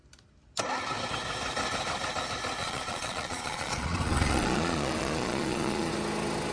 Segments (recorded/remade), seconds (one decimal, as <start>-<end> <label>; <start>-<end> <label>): 0.0-2.6 recorded; 2.6-5.9 remade; 5.9-6.5 recorded